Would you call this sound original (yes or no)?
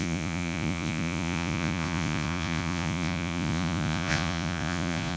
no